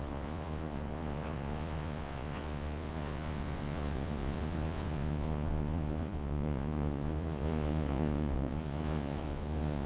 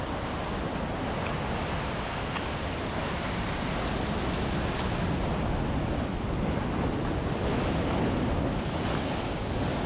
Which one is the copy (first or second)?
first